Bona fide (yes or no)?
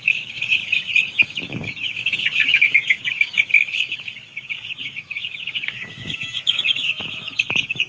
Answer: no